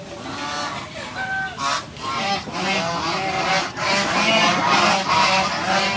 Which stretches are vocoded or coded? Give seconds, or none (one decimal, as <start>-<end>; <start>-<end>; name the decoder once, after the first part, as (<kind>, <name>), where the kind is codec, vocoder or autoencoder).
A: 4.5-5.0 (vocoder, BigVGAN v2)